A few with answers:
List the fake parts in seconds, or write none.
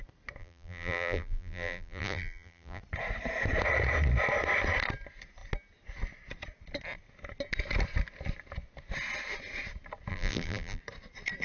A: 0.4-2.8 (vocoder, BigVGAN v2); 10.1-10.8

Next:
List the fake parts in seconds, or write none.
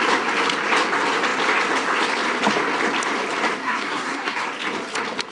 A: 3.6-4.4 (codec, SNAC)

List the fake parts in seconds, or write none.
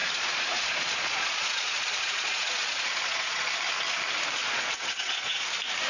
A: 0.0-3.5 (vocoder, Vocos); 4.4-5.5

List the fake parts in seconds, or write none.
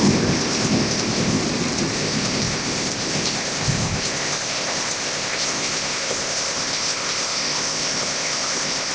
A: 0.0-1.4 (codec, ZipCodec); 1.9-8.9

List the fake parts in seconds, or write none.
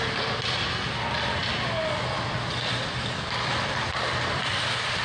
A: none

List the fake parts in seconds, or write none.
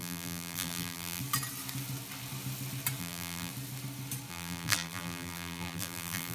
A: 0.0-1.2 (vocoder, BigVGAN v2); 3.0-3.5; 4.3-6.3